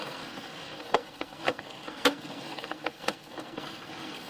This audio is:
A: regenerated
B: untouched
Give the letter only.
A